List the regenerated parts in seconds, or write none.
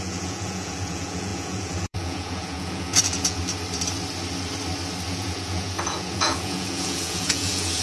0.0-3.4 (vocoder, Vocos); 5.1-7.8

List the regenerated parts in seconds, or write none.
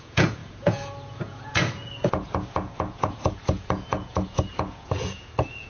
0.0-5.7 (vocoder, Vocos)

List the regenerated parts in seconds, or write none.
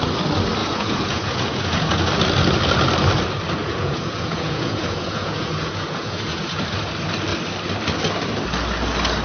0.6-2.1 (vocoder, Vocos); 3.6-6.6